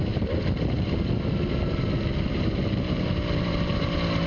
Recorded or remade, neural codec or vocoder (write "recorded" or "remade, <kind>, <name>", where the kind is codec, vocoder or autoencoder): recorded